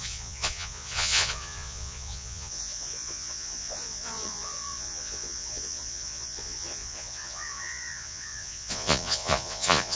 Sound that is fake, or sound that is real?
fake